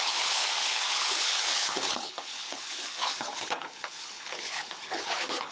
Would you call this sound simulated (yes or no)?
yes